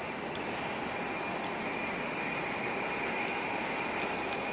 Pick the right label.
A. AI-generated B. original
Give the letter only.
B